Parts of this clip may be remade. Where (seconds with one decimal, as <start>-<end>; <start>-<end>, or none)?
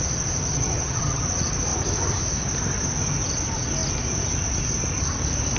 0.5-1.2